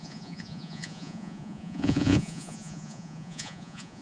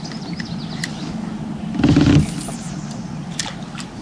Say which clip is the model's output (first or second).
first